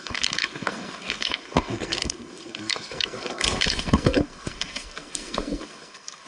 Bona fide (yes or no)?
no